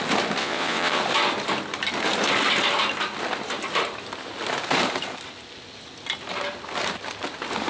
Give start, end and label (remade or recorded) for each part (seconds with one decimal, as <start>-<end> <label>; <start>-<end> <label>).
0.0-0.4 recorded; 0.4-1.0 remade; 1.0-7.7 recorded